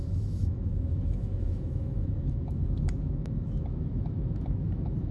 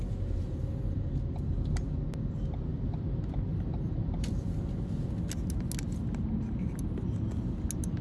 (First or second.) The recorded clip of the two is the second